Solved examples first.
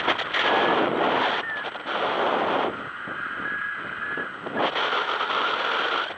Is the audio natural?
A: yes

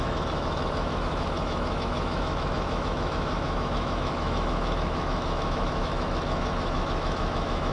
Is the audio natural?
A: no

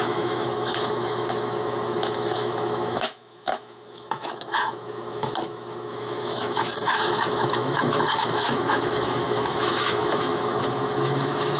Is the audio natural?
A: no